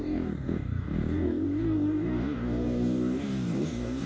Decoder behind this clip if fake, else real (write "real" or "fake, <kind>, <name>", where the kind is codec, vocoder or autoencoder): fake, codec, DAC